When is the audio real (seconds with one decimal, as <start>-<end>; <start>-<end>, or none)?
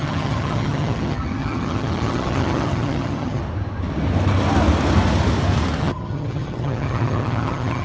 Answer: 3.4-5.8